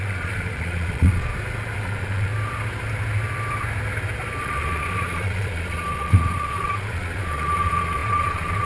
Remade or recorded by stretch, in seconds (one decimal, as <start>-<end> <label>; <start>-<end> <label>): 0.0-1.3 remade; 1.3-1.8 recorded; 1.8-2.3 remade; 2.3-4.4 recorded; 4.4-8.7 remade